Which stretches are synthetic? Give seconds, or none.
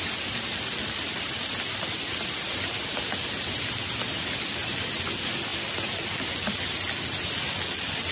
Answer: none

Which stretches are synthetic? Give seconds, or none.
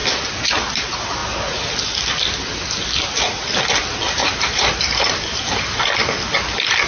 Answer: 4.2-5.8 (vocoder, BigVGAN v2)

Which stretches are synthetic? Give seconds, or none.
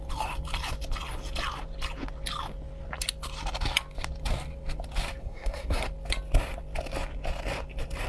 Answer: 5.2-5.8 (codec, SNAC)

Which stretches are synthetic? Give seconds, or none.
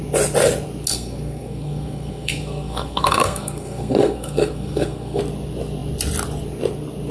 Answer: 0.9-5.2 (codec, SNAC)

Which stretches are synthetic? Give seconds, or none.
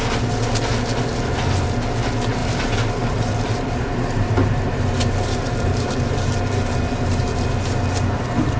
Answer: 2.4-6.8 (vocoder, BigVGAN v2)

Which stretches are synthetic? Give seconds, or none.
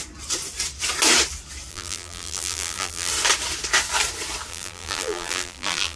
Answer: 1.7-3.1 (vocoder, BigVGAN v2); 4.5-6.0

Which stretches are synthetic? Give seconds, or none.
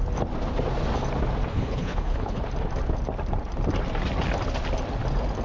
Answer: 1.5-2.4 (codec, HILCodec)